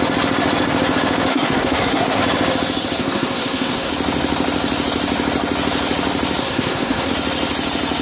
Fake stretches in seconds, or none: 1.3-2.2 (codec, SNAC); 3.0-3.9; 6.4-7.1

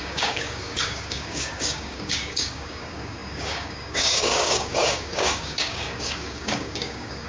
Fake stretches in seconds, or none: 0.0-7.3 (codec, DAC)

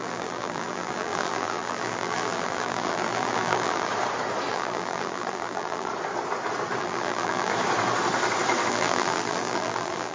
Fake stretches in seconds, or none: 0.0-3.9 (vocoder, BigVGAN v2); 4.5-5.9; 6.8-7.5; 8.7-10.1

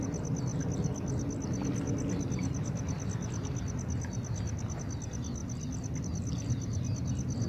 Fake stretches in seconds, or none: none

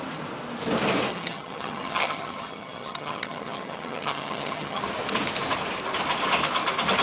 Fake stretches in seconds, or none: 1.1-4.8 (vocoder, HiFi-GAN)

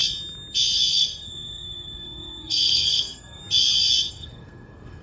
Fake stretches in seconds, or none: 0.9-3.4 (codec, SNAC); 4.1-5.0

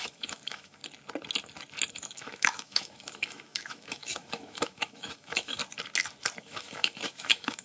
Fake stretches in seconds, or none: 0.0-0.8 (autoencoder, DAC-VAE); 1.9-5.6; 6.4-7.6

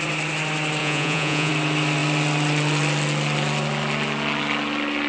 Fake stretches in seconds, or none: 0.8-1.5 (vocoder, Vocos)